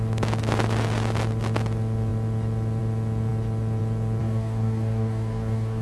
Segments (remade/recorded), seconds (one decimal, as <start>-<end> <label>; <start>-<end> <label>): 0.0-4.2 recorded; 4.2-5.8 remade